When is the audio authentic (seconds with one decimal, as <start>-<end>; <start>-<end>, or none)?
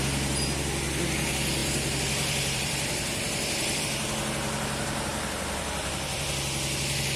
0.0-1.6; 3.8-5.1; 6.3-7.2